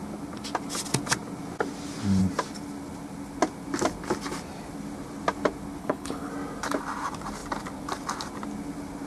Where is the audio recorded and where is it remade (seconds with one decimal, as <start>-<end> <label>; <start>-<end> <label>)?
0.0-5.8 recorded; 5.8-6.3 remade; 6.3-9.1 recorded

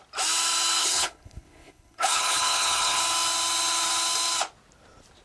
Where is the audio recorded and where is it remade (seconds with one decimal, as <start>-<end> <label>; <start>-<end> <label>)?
0.0-0.8 recorded; 0.8-3.0 remade; 3.0-5.2 recorded